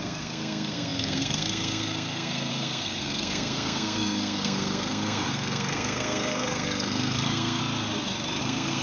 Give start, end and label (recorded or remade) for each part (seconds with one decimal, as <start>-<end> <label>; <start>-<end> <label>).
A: 0.0-7.6 remade; 7.6-8.4 recorded; 8.4-8.8 remade